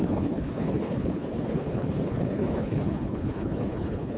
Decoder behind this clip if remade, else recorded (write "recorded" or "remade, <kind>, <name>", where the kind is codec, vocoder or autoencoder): remade, codec, HILCodec